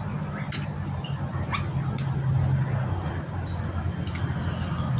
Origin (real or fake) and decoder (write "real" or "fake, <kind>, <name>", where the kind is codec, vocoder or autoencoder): real